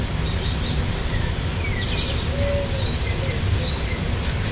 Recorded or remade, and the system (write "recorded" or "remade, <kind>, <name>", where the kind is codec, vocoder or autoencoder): recorded